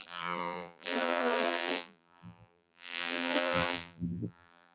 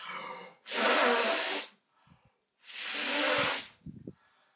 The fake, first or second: first